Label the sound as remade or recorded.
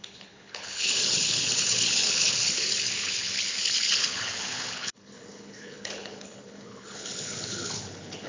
remade